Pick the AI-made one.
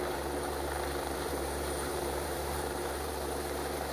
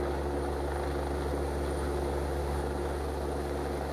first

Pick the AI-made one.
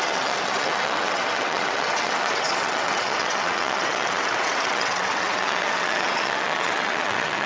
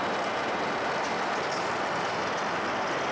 first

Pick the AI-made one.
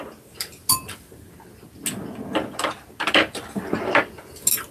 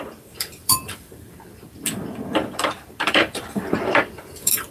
second